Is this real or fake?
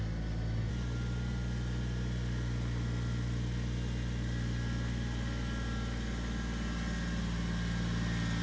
real